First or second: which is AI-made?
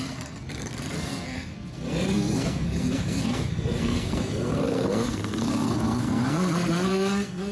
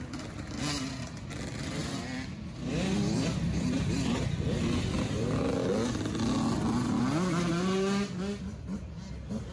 first